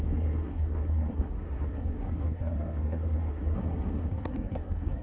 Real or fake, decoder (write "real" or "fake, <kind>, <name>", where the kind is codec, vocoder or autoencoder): fake, codec, SNAC